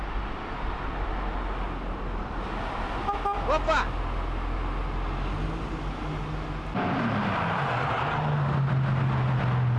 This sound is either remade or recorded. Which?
recorded